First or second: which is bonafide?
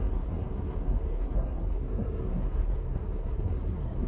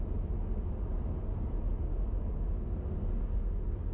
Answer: second